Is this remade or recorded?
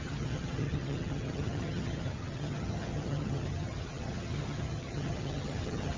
remade